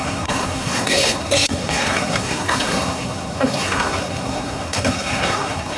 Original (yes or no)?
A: no